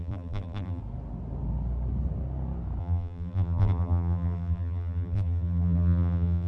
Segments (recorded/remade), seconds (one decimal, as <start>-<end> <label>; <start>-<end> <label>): 0.0-0.8 remade; 0.8-2.8 recorded; 2.8-6.5 remade